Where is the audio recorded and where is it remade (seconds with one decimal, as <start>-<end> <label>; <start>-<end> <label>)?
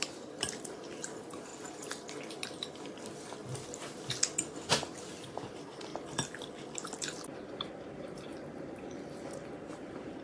0.0-1.5 remade; 1.5-5.5 recorded; 5.5-5.9 remade; 5.9-7.5 recorded; 7.5-10.2 remade